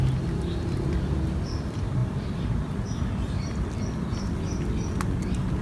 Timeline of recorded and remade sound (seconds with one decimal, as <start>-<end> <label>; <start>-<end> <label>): 0.0-5.6 recorded